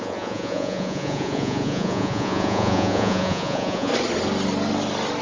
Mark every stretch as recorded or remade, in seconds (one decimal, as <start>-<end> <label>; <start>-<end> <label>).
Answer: 0.0-3.9 remade; 3.9-5.2 recorded